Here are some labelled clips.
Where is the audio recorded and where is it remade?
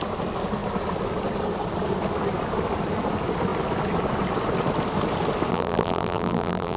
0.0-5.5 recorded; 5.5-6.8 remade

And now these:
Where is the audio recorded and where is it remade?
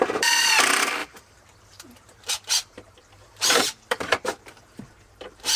0.0-5.6 remade